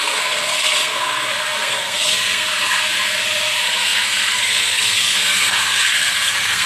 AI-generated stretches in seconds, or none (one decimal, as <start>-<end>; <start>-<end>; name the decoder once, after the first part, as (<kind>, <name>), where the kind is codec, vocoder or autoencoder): 0.0-6.7 (codec, SNAC)